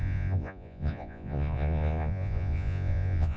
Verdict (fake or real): fake